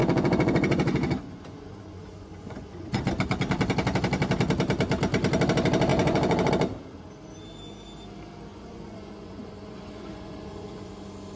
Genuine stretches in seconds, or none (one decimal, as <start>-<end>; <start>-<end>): 3.0-5.9; 6.5-8.5; 10.9-11.4

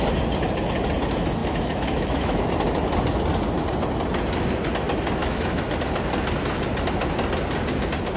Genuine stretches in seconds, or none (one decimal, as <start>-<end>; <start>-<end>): 0.0-1.4; 2.4-5.2; 5.7-8.2

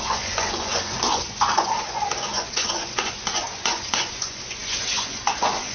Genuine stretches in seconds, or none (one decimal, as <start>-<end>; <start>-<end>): none

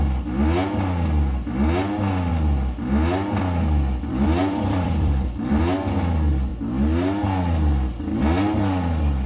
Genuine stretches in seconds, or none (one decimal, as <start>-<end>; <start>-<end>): 0.0-4.1; 5.6-9.3

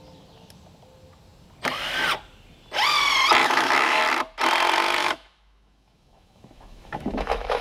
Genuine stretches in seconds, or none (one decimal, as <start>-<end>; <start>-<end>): 0.0-3.4; 4.0-5.0

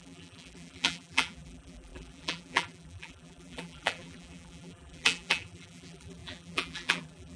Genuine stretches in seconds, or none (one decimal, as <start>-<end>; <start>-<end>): none

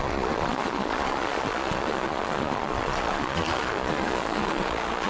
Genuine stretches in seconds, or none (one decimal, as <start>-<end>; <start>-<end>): none